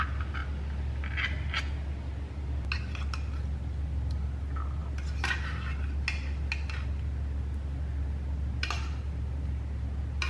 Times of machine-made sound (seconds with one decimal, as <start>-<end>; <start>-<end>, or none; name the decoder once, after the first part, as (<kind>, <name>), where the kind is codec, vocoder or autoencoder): none